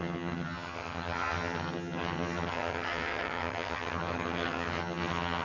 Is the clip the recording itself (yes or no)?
no